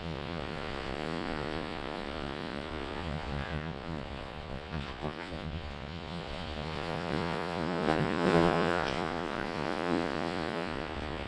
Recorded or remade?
remade